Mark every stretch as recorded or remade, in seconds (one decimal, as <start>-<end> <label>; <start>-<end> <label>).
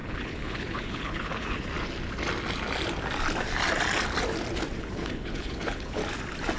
0.0-1.7 remade; 1.7-4.8 recorded; 4.8-6.0 remade; 6.0-6.6 recorded